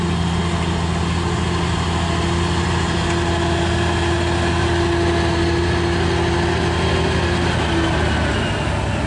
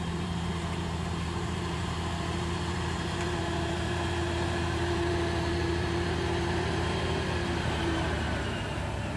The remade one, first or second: second